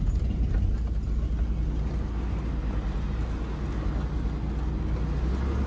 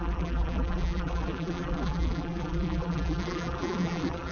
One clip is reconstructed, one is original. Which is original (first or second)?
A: first